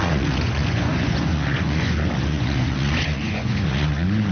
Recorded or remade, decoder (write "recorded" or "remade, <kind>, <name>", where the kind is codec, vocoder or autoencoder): remade, vocoder, Vocos